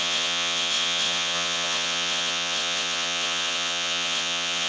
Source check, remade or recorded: remade